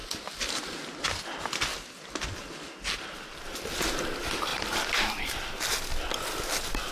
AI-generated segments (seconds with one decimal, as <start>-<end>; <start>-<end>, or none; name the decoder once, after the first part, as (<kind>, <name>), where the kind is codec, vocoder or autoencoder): none